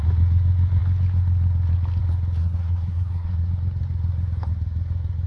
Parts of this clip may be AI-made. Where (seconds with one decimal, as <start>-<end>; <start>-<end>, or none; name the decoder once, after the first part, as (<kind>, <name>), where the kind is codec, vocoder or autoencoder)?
2.4-3.5 (codec, SNAC)